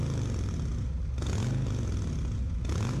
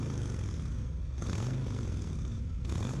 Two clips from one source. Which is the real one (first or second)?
first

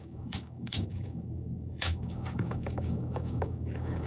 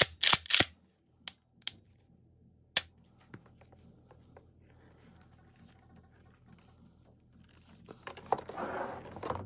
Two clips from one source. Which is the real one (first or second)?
second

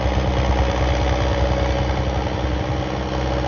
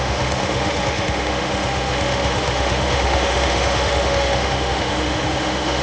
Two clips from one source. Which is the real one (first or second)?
first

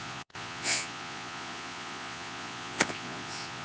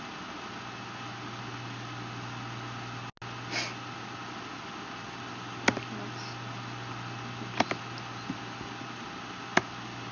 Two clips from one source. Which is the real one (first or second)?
second